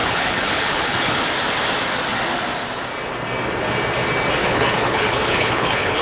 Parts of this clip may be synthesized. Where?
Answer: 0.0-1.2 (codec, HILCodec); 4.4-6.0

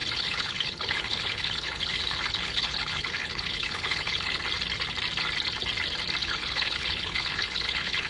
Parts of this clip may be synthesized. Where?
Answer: 0.0-4.4 (codec, HILCodec); 6.2-8.1

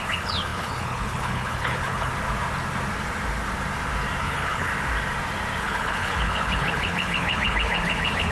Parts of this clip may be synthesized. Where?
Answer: 0.0-2.1 (codec, HILCodec); 4.2-4.7; 5.6-8.3

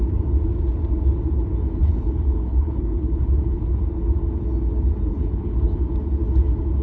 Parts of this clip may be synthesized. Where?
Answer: 1.8-3.8 (codec, HILCodec); 5.1-5.8

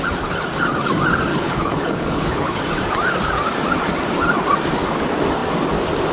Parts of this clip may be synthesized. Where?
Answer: 1.3-2.6 (codec, HILCodec)

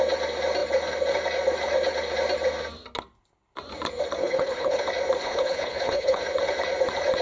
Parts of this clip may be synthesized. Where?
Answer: 4.2-4.8 (codec, HILCodec); 5.2-6.2

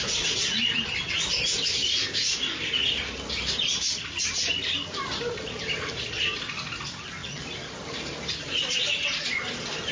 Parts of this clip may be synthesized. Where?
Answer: none